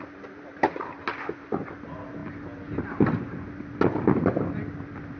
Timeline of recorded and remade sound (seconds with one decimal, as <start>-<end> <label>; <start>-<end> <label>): 0.0-5.2 recorded